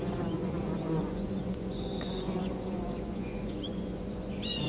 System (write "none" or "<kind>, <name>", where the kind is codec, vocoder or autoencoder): vocoder, Vocos